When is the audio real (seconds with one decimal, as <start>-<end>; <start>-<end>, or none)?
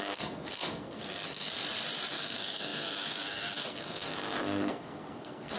1.5-2.1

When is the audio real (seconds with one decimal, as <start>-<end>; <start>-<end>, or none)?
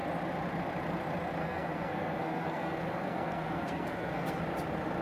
0.0-1.4; 4.4-5.0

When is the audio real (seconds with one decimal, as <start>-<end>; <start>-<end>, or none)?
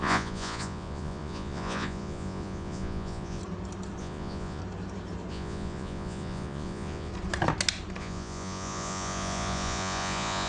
3.4-4.0; 4.6-5.3; 7.1-8.0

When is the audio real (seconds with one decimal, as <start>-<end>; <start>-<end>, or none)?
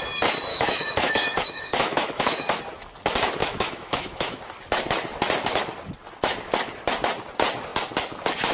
0.0-0.5; 2.6-3.4; 4.4-8.5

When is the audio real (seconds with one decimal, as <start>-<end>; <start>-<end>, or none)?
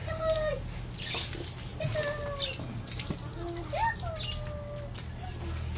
0.0-5.8